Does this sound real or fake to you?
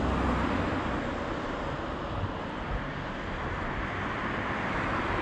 real